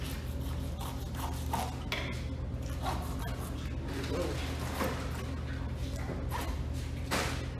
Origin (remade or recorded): recorded